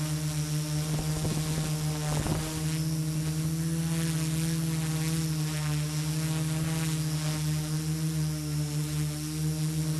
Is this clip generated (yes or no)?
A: no